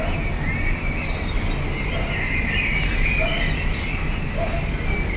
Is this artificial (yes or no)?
no